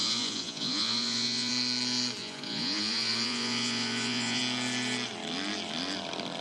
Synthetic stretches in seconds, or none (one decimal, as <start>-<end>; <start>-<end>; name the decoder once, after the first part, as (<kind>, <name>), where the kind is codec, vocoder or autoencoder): 0.0-1.5 (vocoder, Vocos); 2.2-4.4